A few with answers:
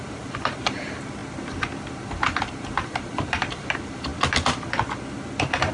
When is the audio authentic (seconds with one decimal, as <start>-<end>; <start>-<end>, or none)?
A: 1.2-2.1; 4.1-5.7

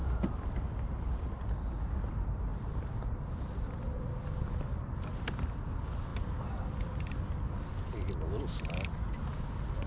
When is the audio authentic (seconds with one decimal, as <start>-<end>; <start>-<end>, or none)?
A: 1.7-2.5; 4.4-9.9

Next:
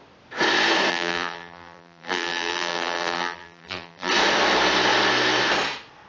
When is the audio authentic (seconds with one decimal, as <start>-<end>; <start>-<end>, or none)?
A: 0.0-0.9; 4.1-6.1

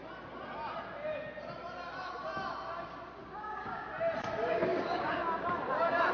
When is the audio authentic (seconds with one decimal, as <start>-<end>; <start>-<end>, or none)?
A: 0.0-3.2; 3.9-4.5; 5.2-6.1

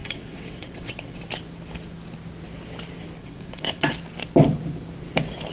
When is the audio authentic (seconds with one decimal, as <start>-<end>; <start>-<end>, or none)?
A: 1.2-3.2; 3.9-5.5

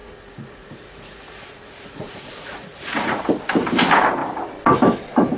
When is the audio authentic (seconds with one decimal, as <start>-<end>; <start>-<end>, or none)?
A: 3.2-5.4

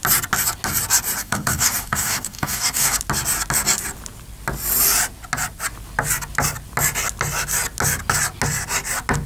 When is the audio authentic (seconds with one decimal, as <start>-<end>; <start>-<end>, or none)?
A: 0.0-1.2; 3.0-9.3